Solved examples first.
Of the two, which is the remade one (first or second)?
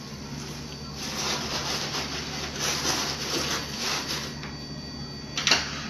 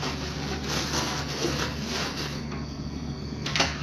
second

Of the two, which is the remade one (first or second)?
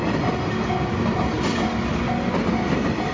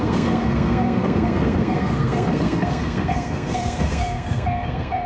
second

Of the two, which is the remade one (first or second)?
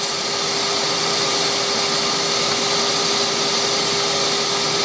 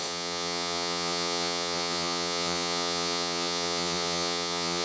second